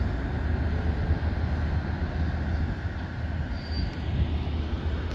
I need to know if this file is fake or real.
real